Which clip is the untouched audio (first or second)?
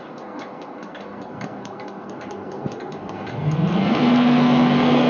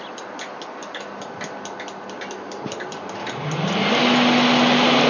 second